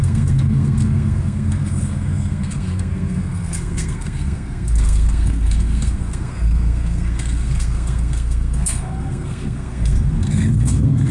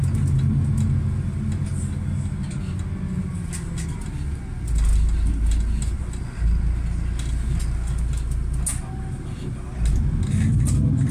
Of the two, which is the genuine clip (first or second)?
second